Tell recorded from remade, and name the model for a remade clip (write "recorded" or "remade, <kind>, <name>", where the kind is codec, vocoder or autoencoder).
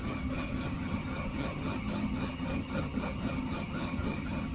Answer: remade, vocoder, HiFi-GAN